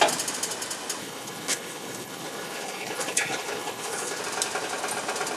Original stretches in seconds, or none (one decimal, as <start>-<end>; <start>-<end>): 0.0-1.0; 4.2-5.4